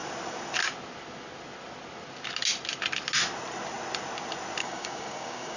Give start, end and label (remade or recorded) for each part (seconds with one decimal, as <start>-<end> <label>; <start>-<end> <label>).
0.0-4.6 recorded; 4.6-5.6 remade